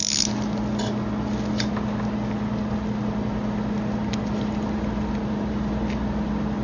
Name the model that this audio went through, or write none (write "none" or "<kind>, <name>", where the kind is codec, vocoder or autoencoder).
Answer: none